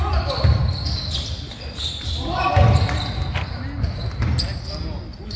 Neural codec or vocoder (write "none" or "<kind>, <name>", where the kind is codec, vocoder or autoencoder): none